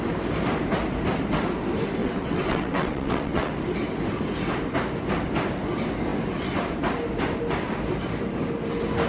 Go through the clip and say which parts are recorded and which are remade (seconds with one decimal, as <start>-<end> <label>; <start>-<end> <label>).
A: 0.0-2.0 recorded; 2.0-3.5 remade; 3.5-9.1 recorded